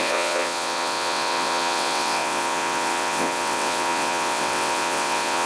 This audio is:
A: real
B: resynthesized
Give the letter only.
B